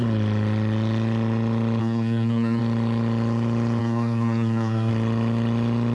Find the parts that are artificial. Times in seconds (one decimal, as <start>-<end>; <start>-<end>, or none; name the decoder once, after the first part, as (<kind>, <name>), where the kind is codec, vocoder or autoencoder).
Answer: 1.8-2.6 (codec, SNAC); 3.8-4.9